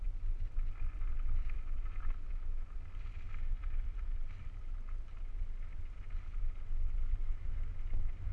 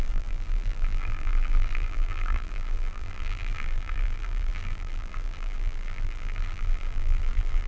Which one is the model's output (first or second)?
second